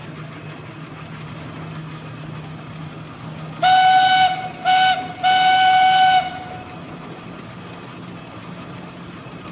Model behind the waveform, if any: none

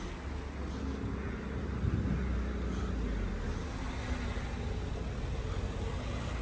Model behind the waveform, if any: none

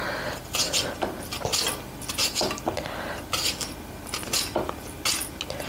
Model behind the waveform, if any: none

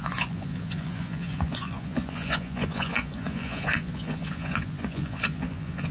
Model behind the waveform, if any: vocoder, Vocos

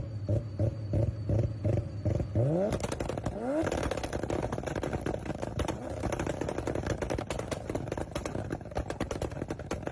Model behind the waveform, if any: none